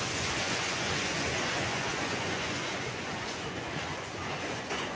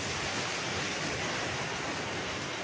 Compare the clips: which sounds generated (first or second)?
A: first